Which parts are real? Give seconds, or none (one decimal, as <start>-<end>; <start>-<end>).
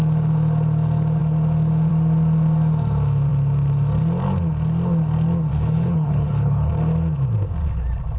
0.0-5.5; 6.7-8.2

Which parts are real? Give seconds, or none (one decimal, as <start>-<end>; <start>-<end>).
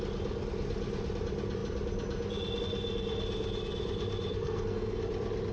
0.0-4.3; 5.0-5.5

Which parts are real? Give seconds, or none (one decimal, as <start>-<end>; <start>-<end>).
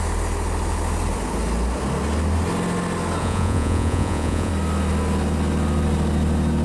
0.0-3.2; 4.5-6.6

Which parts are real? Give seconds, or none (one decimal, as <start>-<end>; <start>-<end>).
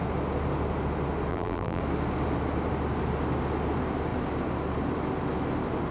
0.0-1.3; 1.8-5.9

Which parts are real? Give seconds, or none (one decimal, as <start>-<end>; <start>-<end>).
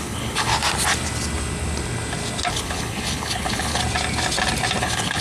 0.5-2.5; 3.8-4.8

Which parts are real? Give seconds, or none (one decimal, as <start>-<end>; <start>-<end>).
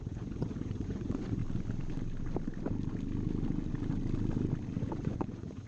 1.4-4.8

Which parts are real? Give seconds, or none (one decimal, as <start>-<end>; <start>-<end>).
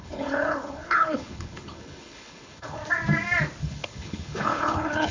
2.8-3.6